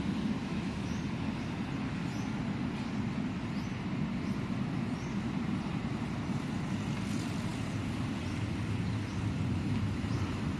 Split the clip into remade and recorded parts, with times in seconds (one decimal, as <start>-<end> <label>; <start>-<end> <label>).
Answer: 0.0-0.4 recorded; 0.4-0.9 remade; 0.9-10.6 recorded

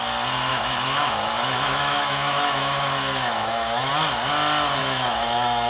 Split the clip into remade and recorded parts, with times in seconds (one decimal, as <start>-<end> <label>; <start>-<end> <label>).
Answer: 0.0-0.5 recorded; 0.5-3.9 remade; 3.9-4.8 recorded; 4.8-5.7 remade

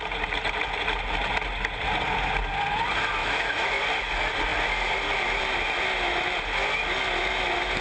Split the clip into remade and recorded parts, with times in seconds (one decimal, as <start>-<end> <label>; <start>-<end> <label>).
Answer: 0.0-3.2 recorded; 3.2-3.8 remade; 3.8-7.8 recorded

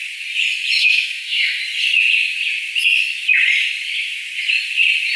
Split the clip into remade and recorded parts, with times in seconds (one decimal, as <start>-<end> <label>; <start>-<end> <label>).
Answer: 0.0-0.8 recorded; 0.8-1.6 remade; 1.6-5.2 recorded

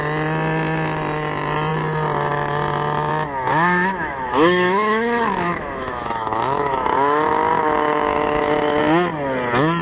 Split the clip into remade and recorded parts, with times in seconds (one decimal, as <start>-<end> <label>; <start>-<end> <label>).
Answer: 0.0-3.5 recorded; 3.5-8.8 remade; 8.8-9.8 recorded

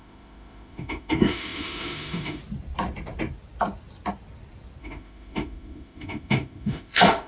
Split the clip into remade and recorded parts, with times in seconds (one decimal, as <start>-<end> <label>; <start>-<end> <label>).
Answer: 0.0-2.4 remade; 2.4-4.8 recorded; 4.8-7.3 remade

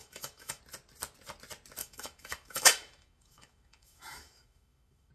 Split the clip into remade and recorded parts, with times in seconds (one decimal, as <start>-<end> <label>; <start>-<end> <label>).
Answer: 0.0-0.6 remade; 0.6-1.8 recorded; 1.8-5.1 remade

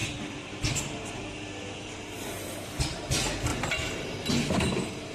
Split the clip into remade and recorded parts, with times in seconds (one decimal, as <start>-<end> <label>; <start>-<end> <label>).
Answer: 0.0-5.1 recorded